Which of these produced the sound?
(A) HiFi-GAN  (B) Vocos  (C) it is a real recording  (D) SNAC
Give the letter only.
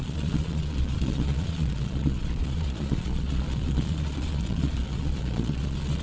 B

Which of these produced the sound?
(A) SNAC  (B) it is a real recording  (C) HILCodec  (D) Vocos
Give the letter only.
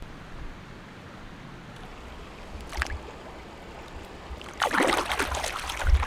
B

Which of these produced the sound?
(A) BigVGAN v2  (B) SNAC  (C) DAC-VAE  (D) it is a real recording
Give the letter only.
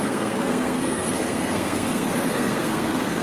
B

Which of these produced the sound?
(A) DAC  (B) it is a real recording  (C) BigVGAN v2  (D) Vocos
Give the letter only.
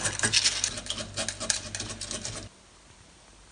B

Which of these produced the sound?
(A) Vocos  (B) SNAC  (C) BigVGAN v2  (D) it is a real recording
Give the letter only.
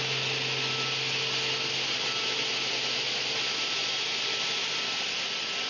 D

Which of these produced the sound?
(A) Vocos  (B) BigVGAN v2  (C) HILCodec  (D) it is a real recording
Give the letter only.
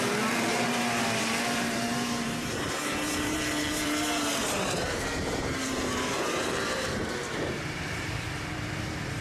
B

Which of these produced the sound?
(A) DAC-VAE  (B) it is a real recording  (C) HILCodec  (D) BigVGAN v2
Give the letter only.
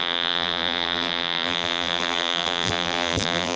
D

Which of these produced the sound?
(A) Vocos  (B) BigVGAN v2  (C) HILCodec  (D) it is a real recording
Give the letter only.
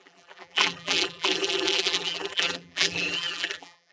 B